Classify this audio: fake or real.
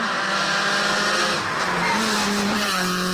real